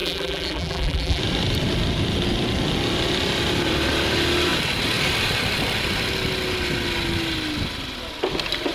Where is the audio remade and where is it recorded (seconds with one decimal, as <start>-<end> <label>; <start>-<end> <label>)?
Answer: 0.0-1.2 remade; 1.2-8.7 recorded